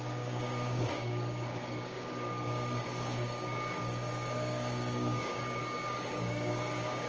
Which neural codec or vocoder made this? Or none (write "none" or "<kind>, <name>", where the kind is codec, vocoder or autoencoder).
codec, DAC